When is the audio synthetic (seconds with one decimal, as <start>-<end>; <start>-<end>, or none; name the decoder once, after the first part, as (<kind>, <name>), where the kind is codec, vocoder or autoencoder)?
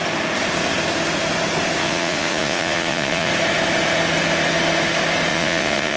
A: 1.8-3.3 (vocoder, Vocos); 5.3-6.0